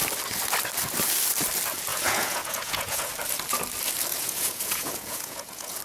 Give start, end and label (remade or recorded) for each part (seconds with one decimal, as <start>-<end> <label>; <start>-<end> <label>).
0.0-1.9 recorded; 1.9-3.1 remade; 3.1-4.1 recorded; 4.1-5.8 remade